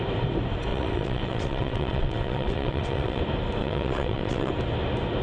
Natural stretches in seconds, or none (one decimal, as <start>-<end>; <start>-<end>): 0.0-0.7; 3.2-3.6; 4.5-5.2